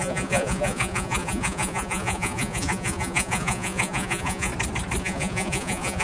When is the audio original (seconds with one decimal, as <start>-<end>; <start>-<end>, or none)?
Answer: 4.5-5.0